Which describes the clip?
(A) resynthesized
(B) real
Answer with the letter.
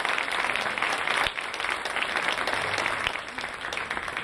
B